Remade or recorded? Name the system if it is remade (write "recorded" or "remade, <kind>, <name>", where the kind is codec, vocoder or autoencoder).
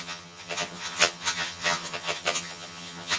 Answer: remade, vocoder, HiFi-GAN